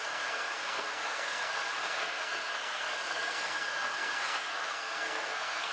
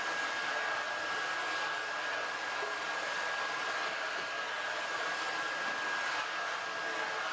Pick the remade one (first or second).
first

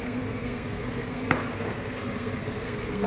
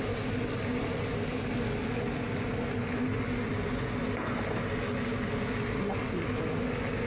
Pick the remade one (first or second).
first